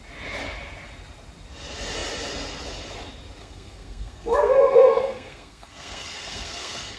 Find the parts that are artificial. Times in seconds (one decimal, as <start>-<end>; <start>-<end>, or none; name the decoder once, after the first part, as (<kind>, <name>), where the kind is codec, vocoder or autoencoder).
3.4-7.0 (codec, SNAC)